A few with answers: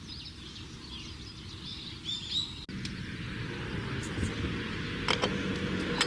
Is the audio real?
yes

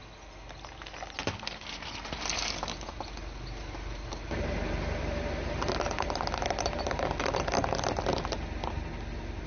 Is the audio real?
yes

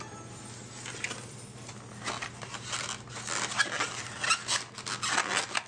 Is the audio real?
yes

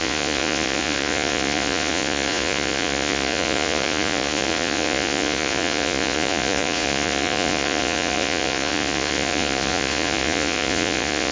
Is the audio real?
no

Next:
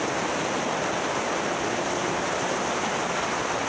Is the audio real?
yes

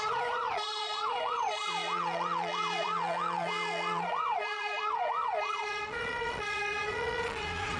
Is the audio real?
no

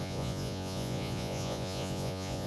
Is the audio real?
no